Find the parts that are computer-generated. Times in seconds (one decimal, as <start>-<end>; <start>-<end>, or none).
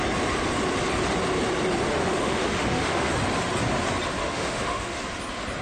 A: 1.9-3.1; 4.2-5.0